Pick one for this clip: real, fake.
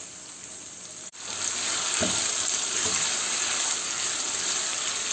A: fake